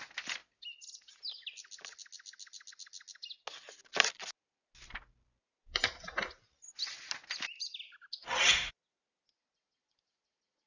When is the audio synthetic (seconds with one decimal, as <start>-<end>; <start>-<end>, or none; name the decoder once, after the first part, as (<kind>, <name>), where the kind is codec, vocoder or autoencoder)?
none